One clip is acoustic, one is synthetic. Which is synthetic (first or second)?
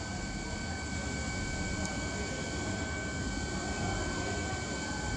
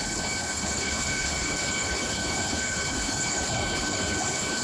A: second